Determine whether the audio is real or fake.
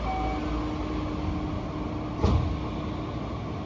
real